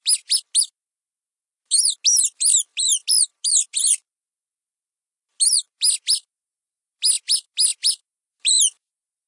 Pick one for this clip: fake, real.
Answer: real